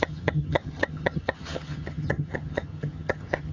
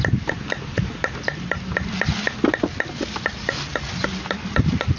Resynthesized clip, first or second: first